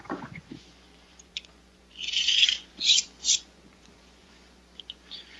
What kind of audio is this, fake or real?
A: fake